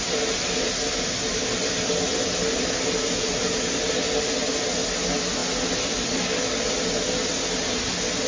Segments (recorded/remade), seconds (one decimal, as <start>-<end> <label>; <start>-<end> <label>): 0.0-8.3 recorded